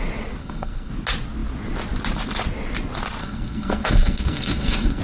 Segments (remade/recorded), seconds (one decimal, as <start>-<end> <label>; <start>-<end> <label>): 0.0-0.4 recorded; 0.4-0.9 remade; 0.9-3.2 recorded; 3.2-5.0 remade